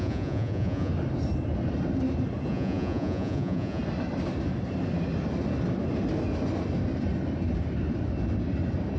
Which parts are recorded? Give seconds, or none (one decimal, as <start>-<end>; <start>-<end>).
0.9-2.5; 3.8-9.0